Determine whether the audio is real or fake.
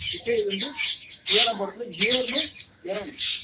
fake